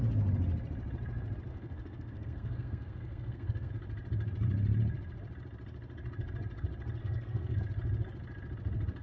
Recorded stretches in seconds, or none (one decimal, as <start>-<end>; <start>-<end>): 0.0-1.5; 3.7-7.0; 7.6-9.0